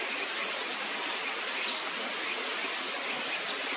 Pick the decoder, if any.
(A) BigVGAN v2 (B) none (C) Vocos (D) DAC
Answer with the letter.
B